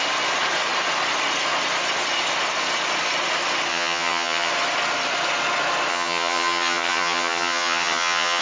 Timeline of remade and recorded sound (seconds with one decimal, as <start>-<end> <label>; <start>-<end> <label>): 0.0-3.7 recorded; 3.7-4.5 remade; 4.5-5.9 recorded; 5.9-8.4 remade

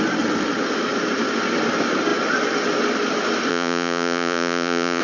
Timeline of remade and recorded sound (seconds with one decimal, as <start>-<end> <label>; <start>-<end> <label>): 0.0-3.5 recorded; 3.5-5.0 remade

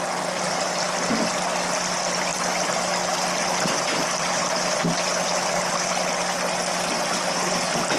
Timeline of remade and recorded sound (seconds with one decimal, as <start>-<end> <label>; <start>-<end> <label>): 0.0-8.0 recorded

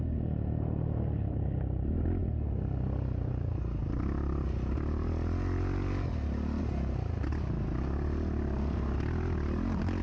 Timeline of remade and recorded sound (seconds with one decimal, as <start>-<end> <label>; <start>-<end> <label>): 0.0-10.0 recorded

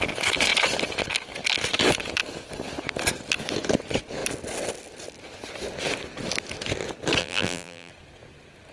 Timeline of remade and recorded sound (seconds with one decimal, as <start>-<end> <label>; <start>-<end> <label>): 0.0-7.2 recorded; 7.2-7.9 remade; 7.9-8.7 recorded

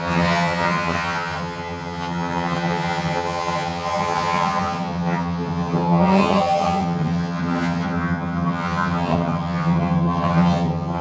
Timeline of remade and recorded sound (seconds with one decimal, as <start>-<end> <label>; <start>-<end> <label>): 0.0-11.0 remade